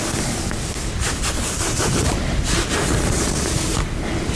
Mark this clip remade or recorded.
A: recorded